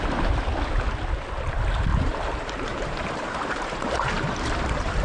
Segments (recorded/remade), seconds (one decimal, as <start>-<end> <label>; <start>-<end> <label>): 0.0-1.9 recorded; 1.9-5.0 remade